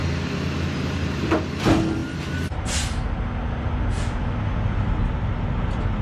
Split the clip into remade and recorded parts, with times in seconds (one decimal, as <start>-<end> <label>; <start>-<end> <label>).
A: 0.0-6.0 recorded